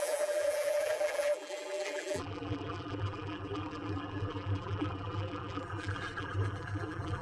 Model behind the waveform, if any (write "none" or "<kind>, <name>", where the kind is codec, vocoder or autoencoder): vocoder, BigVGAN v2